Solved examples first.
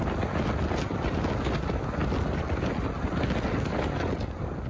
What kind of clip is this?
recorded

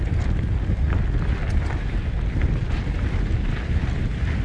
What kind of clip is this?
recorded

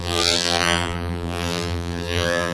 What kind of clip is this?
remade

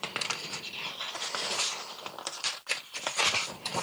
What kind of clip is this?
remade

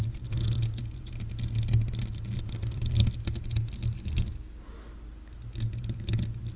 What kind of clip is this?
recorded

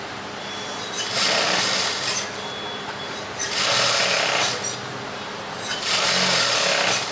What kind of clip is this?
recorded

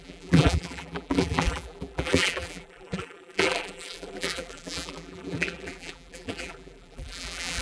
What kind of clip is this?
remade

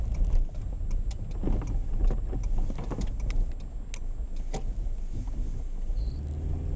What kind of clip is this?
recorded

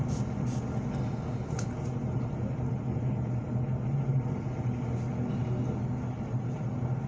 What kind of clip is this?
recorded